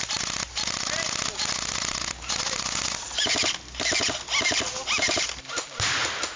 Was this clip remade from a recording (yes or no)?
no